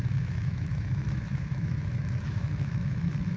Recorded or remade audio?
remade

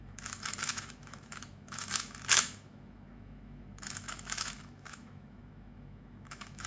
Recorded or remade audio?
remade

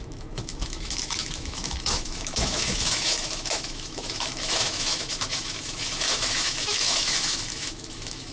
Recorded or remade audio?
remade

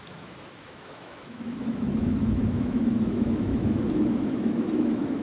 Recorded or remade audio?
remade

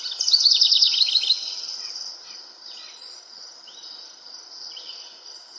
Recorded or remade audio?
recorded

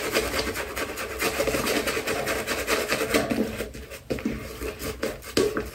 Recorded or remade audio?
recorded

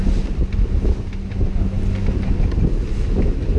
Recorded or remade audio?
recorded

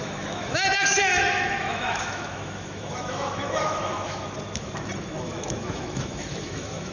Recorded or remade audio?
remade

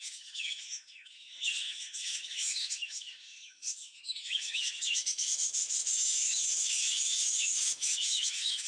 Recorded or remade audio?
remade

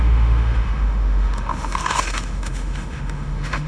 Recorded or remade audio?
remade